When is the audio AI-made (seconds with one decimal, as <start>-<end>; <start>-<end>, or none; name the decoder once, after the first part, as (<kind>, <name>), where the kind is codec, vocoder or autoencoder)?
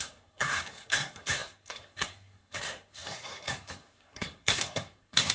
0.0-5.3 (codec, SNAC)